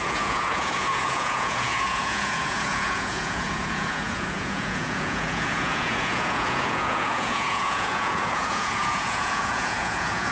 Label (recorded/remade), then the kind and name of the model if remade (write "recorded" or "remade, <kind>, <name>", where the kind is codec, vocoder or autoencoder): remade, vocoder, Vocos